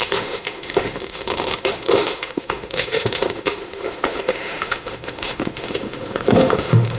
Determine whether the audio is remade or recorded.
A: remade